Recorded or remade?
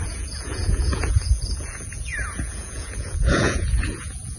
remade